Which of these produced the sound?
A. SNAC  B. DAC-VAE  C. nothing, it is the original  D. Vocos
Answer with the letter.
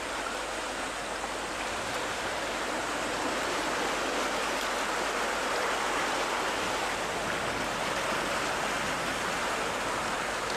C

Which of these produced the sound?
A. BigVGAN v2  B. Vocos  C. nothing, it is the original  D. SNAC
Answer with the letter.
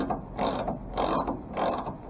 C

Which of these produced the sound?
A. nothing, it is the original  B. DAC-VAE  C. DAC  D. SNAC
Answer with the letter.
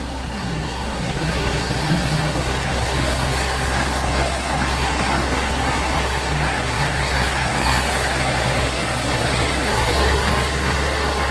D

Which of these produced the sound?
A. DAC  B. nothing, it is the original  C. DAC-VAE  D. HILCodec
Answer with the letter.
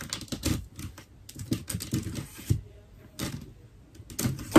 B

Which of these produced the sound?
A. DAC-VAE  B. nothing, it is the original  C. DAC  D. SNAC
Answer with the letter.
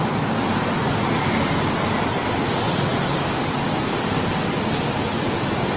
B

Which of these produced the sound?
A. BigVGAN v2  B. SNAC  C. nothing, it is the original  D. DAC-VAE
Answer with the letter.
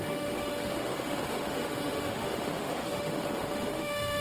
D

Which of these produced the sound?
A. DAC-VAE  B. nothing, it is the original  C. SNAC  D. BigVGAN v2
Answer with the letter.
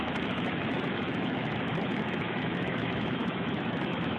A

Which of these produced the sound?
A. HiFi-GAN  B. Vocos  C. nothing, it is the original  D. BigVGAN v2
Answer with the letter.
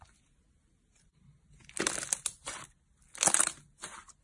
C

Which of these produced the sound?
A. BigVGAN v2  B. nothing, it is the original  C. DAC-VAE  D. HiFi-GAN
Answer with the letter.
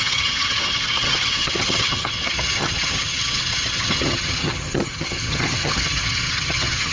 D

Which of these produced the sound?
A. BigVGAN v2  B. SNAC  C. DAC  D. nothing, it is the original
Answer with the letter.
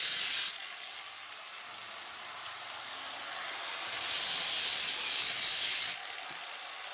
D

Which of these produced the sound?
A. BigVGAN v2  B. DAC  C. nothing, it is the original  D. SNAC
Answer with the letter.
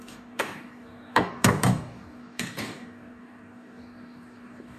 B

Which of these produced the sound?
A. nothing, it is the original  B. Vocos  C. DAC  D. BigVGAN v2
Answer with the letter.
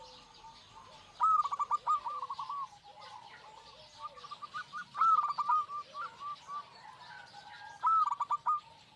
A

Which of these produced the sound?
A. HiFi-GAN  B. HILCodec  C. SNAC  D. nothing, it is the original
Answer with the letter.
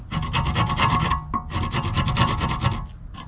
D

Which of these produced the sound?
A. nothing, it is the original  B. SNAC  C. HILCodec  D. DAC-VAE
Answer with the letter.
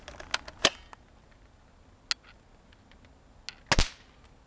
A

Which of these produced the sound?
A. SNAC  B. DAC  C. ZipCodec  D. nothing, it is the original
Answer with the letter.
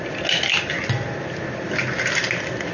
D